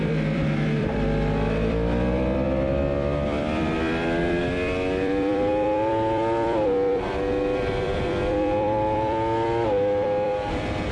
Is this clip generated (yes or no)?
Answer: yes